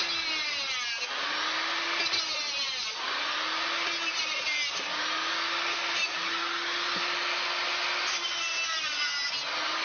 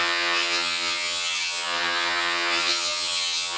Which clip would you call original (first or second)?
first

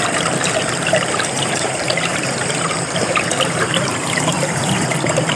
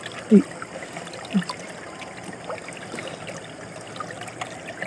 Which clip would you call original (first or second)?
second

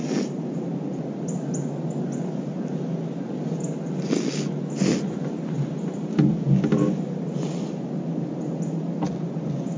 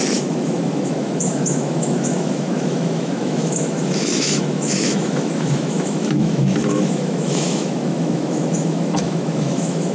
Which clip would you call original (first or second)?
first